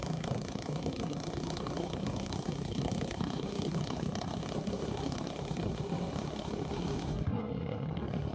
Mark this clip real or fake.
fake